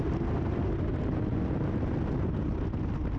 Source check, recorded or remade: recorded